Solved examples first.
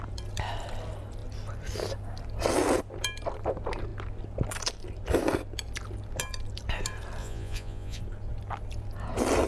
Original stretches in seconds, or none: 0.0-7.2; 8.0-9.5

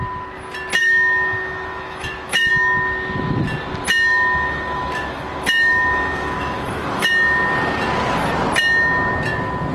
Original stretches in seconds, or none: 0.0-0.8; 2.5-4.1; 7.1-9.7

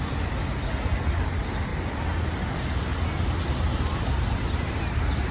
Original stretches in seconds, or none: 1.7-2.3; 2.9-3.5

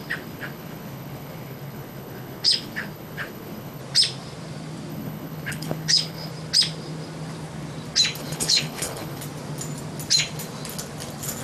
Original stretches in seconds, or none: 3.8-4.9; 6.3-8.2; 9.2-11.4

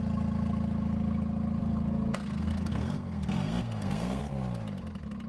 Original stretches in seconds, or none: 0.0-1.6; 4.2-5.3

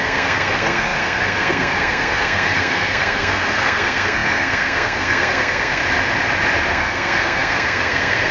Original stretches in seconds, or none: 5.8-6.7